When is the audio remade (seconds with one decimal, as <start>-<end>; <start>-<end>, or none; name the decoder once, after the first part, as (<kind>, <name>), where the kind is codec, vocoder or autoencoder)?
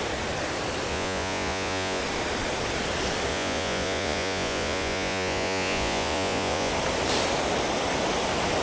0.9-2.0 (vocoder, Vocos); 3.3-6.7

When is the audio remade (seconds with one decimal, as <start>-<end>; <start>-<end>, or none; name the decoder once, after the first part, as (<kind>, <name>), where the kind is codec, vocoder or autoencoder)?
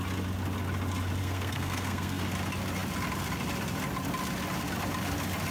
1.2-2.2 (codec, SNAC)